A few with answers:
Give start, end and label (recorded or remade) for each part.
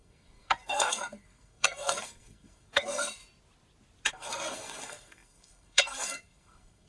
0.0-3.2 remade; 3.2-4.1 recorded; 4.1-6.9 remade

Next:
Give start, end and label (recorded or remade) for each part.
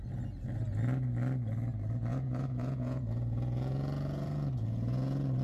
0.0-2.1 recorded; 2.1-5.4 remade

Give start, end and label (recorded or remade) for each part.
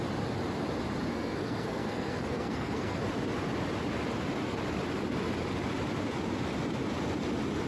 0.0-1.1 recorded; 1.1-3.0 remade; 3.0-7.7 recorded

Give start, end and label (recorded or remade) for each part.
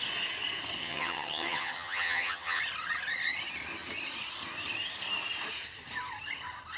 0.0-0.8 recorded; 0.8-2.6 remade; 2.6-6.8 recorded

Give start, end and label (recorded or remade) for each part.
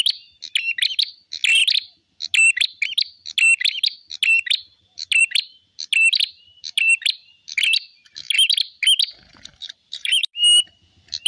0.0-9.5 recorded; 9.5-10.3 remade; 10.3-11.3 recorded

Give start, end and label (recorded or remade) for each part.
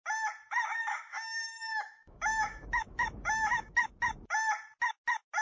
0.0-0.7 recorded; 0.7-3.9 remade; 3.9-5.4 recorded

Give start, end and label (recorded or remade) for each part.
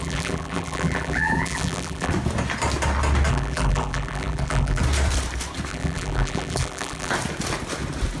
0.0-2.1 remade; 2.1-3.3 recorded; 3.3-4.8 remade; 4.8-5.7 recorded; 5.7-7.1 remade; 7.1-8.2 recorded